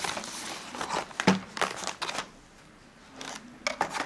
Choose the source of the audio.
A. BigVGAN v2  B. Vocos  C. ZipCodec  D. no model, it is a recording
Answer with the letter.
D